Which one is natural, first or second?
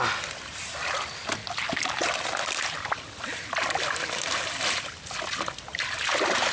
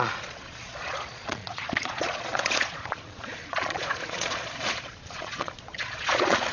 first